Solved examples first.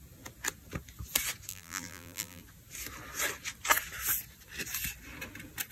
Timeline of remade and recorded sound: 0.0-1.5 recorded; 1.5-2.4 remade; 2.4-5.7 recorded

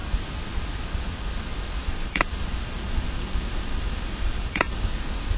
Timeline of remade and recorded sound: 0.0-1.8 recorded; 1.8-5.0 remade; 5.0-5.4 recorded

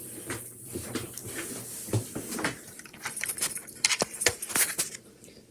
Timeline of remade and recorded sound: 0.0-5.5 remade

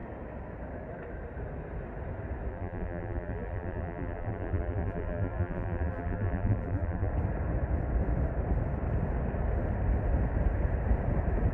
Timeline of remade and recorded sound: 0.0-2.5 recorded; 2.5-7.1 remade; 7.1-11.5 recorded